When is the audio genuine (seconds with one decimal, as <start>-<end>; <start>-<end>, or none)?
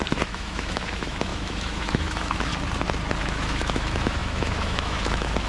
2.5-3.2